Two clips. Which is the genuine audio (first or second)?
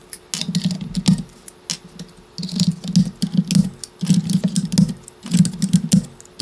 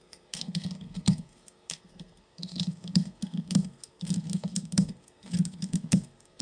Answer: first